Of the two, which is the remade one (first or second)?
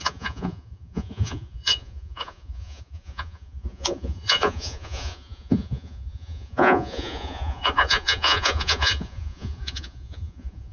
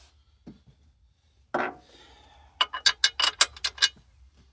first